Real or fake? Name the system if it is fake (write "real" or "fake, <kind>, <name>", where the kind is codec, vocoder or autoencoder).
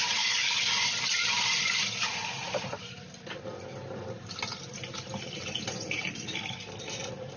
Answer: real